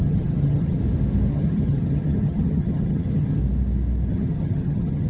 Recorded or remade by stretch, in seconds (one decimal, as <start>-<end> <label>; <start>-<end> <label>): 0.0-0.8 remade; 0.8-1.3 recorded; 1.3-3.4 remade; 3.4-4.1 recorded; 4.1-5.1 remade